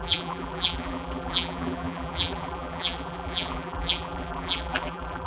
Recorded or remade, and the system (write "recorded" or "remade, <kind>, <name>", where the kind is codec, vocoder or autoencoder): remade, vocoder, BigVGAN v2